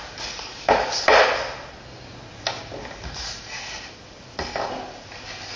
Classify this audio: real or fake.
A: real